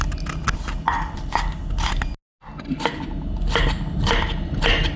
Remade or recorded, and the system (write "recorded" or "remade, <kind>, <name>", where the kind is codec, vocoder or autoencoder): recorded